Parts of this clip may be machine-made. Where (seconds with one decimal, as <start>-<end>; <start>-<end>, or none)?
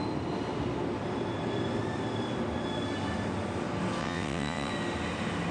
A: 4.0-4.7